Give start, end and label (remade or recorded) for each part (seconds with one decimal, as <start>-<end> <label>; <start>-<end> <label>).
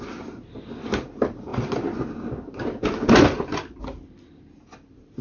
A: 0.0-5.2 recorded